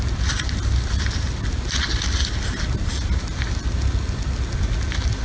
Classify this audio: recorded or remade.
recorded